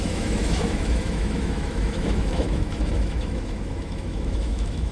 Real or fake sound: fake